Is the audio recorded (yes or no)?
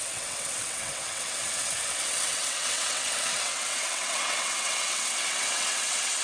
no